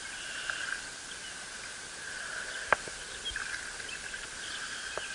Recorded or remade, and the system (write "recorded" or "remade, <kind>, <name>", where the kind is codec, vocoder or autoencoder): recorded